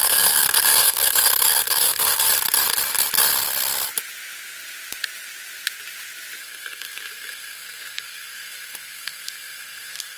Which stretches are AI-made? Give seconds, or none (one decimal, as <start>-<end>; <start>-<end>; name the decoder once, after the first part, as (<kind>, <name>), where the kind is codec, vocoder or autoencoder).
0.0-2.3 (codec, SNAC); 6.4-10.2